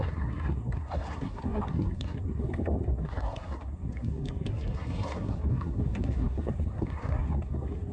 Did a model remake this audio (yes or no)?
yes